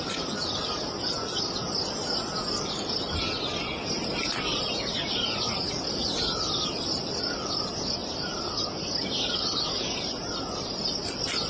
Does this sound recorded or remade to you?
recorded